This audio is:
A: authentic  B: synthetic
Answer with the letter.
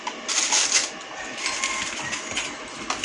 A